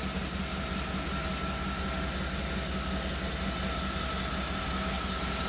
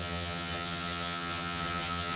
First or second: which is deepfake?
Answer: second